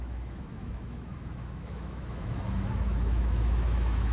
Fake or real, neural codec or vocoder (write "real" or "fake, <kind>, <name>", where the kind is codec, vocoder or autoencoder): fake, autoencoder, DAC-VAE